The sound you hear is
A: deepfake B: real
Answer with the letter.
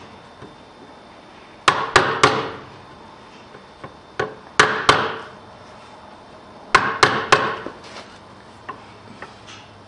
B